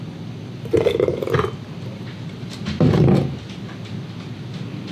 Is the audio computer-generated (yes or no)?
no